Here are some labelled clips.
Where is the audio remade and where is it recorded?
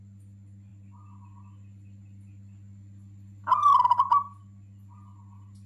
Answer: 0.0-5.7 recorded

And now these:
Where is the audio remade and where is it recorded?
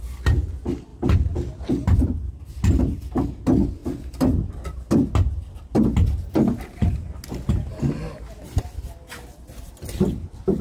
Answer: 0.0-10.6 recorded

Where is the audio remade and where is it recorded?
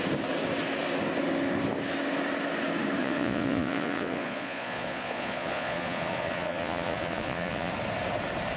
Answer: 0.0-3.0 recorded; 3.0-7.7 remade; 7.7-8.6 recorded